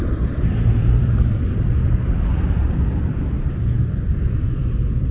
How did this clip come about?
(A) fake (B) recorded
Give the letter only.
A